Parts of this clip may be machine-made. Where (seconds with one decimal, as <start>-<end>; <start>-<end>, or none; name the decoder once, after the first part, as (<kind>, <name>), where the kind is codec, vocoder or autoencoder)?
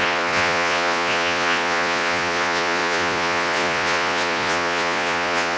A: 0.0-5.6 (vocoder, Vocos)